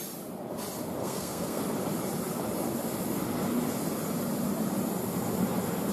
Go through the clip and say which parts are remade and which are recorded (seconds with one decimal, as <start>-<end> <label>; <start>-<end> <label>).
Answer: 0.0-1.0 recorded; 1.0-1.6 remade; 1.6-5.9 recorded